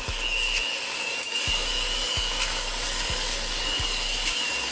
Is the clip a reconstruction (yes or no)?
yes